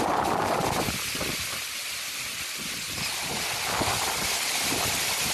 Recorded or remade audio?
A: recorded